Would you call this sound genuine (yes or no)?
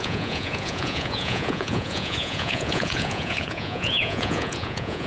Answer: no